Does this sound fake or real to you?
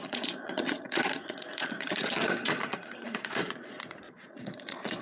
fake